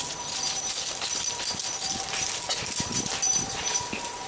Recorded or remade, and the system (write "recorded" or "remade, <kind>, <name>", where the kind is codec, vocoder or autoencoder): recorded